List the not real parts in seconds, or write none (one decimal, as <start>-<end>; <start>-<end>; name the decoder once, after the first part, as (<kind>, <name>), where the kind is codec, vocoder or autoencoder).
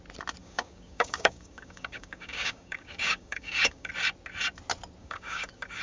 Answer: 0.4-3.9 (codec, DAC); 5.0-5.8